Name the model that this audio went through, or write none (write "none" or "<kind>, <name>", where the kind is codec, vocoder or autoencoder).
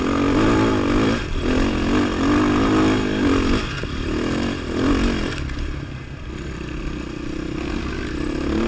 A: none